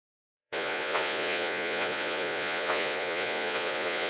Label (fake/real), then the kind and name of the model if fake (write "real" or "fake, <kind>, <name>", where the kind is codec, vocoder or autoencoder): fake, vocoder, Vocos